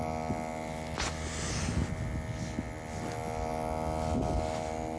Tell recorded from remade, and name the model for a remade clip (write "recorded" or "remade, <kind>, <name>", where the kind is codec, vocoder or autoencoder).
recorded